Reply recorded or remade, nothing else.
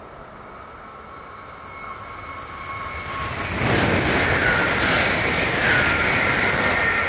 recorded